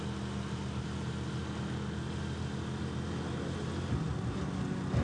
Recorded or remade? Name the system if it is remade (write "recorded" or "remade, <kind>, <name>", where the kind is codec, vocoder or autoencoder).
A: recorded